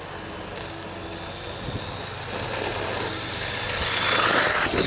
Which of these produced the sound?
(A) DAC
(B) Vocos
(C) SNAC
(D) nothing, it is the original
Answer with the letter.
D